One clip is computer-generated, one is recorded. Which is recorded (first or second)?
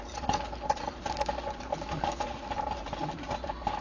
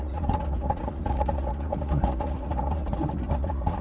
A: first